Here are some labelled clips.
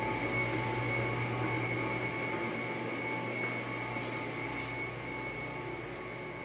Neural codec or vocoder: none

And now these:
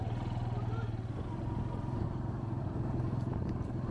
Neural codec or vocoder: none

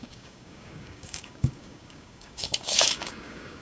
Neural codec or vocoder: codec, DAC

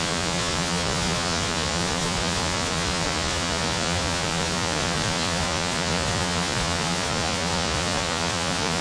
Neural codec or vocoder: vocoder, Vocos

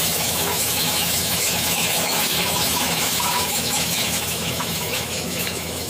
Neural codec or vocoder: autoencoder, DAC-VAE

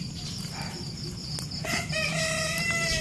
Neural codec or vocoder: none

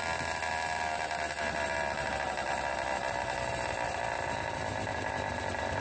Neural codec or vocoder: none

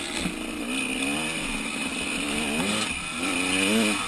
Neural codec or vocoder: none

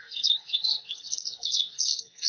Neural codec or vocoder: codec, SNAC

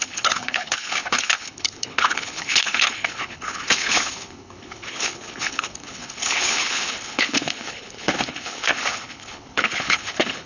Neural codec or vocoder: codec, HILCodec